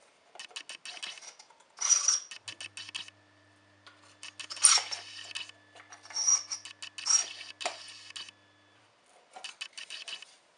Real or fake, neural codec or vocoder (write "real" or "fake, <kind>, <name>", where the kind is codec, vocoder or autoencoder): real